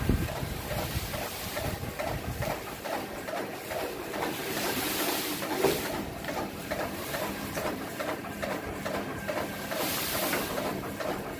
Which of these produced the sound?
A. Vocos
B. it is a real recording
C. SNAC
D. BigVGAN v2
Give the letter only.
D